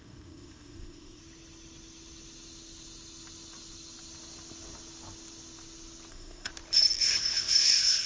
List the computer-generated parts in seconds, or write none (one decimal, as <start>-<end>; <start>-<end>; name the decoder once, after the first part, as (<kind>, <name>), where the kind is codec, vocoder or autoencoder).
0.0-1.2 (codec, ZipCodec); 6.1-6.5; 7.0-8.1